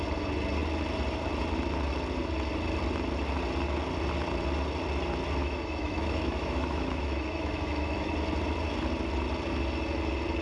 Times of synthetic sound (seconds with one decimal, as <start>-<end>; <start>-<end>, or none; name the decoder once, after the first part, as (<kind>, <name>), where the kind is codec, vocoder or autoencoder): 5.4-8.1 (autoencoder, DAC-VAE)